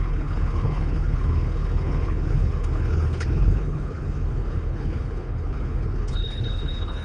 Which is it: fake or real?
fake